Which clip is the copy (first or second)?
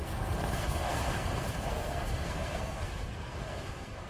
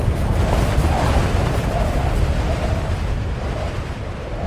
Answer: first